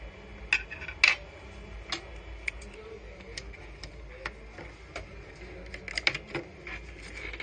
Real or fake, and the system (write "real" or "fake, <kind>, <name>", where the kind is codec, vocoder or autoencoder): real